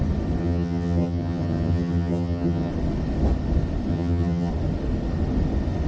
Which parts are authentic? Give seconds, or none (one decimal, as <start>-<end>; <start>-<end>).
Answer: 0.0-0.4; 2.7-3.9; 4.5-5.9